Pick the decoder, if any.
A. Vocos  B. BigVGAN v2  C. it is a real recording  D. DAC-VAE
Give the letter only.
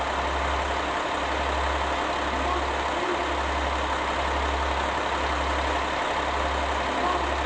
C